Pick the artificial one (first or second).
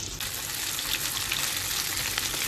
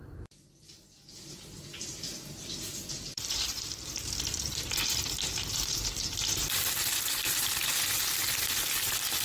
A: second